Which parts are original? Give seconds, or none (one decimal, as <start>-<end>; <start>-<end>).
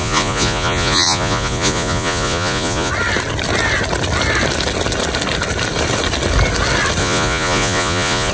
2.9-7.0